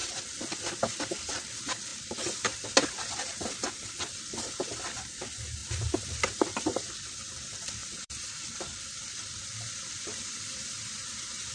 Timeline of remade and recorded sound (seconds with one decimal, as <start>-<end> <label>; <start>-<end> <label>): 0.0-1.1 remade; 1.1-7.8 recorded; 7.8-11.5 remade